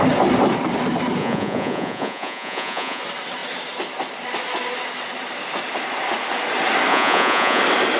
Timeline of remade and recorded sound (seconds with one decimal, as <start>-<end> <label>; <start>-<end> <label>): 0.0-1.2 recorded; 1.2-3.0 remade; 3.0-6.9 recorded; 6.9-7.6 remade; 7.6-8.0 recorded